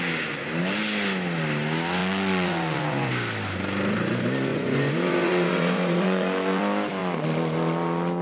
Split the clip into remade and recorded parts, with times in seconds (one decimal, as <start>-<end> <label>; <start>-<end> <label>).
0.0-2.0 recorded; 2.0-3.1 remade; 3.1-4.5 recorded; 4.5-6.6 remade; 6.6-8.2 recorded